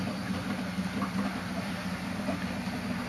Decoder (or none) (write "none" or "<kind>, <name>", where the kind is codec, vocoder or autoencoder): none